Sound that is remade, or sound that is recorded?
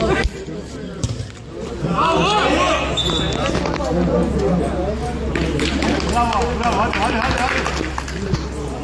recorded